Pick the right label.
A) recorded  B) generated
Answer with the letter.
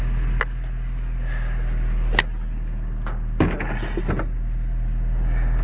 A